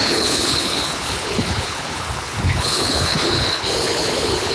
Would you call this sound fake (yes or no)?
yes